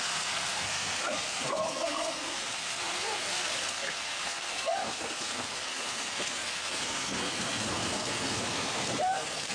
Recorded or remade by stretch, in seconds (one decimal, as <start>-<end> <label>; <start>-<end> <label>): 0.0-9.5 remade